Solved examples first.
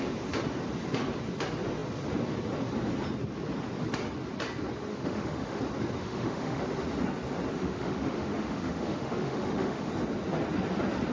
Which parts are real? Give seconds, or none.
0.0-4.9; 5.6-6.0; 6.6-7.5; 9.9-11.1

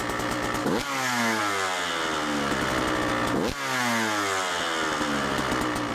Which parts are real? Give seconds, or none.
0.0-0.6; 1.4-5.9

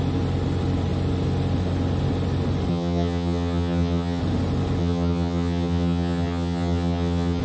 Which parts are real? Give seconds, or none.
0.0-2.7; 4.2-4.8